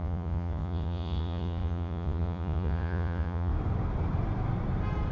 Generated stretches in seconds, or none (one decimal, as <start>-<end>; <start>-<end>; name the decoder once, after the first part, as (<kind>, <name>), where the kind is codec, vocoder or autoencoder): 0.0-3.5 (vocoder, Vocos)